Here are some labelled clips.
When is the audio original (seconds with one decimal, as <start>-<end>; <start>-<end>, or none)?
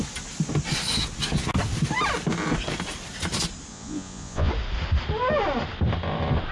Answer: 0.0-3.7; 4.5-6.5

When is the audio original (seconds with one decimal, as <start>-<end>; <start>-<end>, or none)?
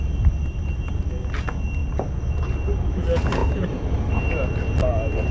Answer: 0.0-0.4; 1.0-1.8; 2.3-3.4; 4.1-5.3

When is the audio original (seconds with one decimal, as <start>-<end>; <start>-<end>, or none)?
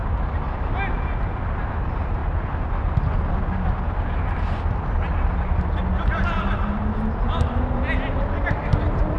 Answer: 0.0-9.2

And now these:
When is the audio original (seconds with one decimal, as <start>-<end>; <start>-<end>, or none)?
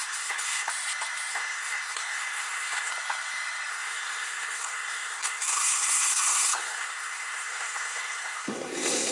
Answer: 0.7-1.3; 2.9-3.7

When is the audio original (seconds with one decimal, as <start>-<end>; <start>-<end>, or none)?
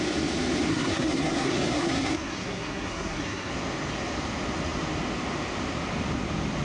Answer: 0.0-0.7; 3.5-6.6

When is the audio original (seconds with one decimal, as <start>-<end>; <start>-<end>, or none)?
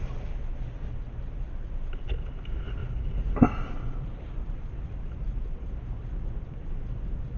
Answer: 0.0-7.4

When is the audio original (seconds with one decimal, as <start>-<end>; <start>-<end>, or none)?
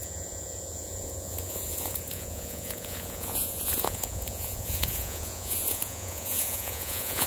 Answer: none